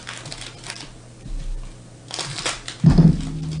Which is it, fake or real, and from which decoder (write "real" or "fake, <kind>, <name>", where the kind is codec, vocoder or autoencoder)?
real